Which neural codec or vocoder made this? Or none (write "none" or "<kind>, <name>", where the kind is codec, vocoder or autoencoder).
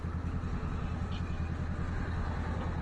none